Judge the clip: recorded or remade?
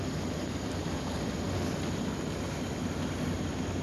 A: recorded